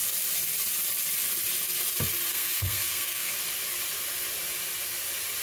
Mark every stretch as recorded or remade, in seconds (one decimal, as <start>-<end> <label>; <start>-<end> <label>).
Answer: 0.0-2.3 recorded; 2.3-3.3 remade; 3.3-5.4 recorded